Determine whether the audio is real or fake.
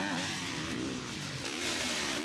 real